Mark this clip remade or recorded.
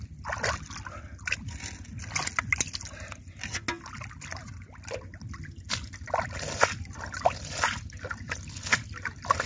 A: recorded